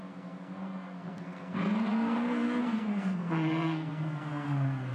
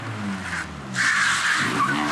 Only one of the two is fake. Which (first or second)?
first